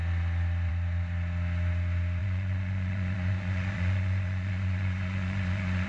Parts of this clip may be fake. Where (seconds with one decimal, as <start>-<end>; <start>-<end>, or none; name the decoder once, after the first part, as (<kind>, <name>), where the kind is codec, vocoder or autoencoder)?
2.2-5.9 (vocoder, Vocos)